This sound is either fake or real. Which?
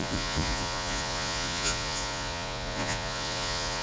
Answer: fake